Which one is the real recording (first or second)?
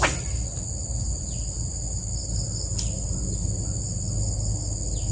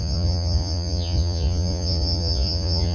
first